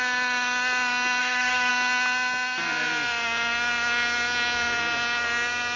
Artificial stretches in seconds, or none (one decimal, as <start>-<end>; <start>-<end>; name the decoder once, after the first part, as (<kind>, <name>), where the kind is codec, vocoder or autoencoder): 1.2-1.7 (codec, SNAC)